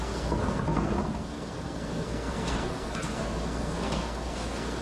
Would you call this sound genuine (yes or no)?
no